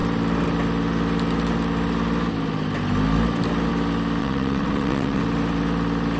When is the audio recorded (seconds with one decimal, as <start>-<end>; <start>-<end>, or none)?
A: 0.0-4.2; 5.2-6.2